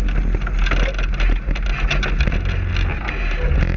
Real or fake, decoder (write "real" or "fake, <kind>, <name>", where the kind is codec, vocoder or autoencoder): real